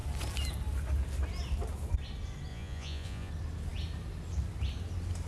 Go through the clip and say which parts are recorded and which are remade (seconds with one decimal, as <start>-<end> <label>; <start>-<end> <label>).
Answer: 0.0-2.5 recorded; 2.5-3.3 remade; 3.3-5.3 recorded